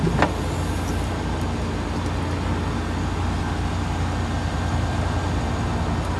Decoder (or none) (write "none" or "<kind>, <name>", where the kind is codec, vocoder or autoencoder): none